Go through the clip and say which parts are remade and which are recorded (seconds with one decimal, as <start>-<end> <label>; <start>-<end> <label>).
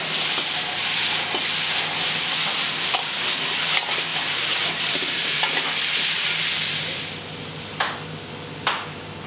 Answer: 0.0-4.1 recorded; 4.1-5.6 remade; 5.6-9.3 recorded